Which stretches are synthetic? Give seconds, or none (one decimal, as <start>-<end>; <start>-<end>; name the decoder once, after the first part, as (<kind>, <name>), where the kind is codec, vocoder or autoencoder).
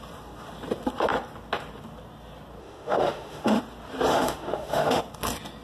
2.6-3.6 (autoencoder, DAC-VAE); 4.1-5.0